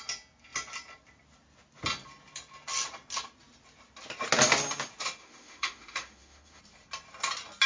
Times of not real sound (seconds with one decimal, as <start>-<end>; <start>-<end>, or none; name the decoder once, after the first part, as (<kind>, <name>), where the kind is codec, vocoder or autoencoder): 5.2-6.6 (autoencoder, DAC-VAE)